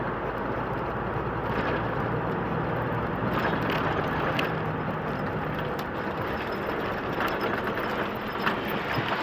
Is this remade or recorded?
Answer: recorded